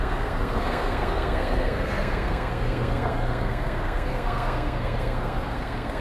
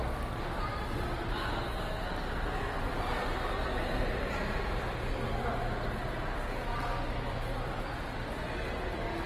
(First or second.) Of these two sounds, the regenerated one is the first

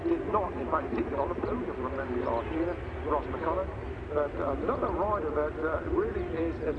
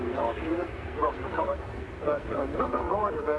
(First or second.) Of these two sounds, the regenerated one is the second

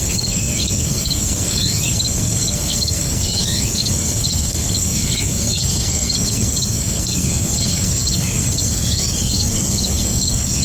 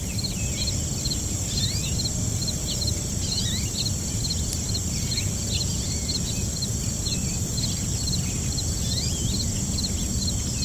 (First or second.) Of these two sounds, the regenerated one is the first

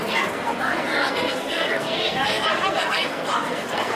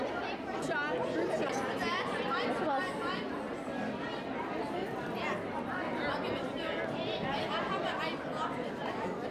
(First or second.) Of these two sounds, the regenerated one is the first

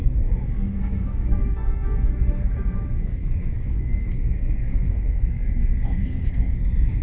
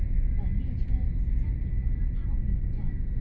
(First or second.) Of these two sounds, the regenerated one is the first